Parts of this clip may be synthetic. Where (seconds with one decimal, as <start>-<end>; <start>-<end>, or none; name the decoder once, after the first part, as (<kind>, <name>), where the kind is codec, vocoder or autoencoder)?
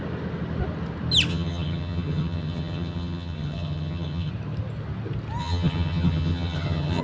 1.3-4.3 (vocoder, HiFi-GAN); 5.4-7.0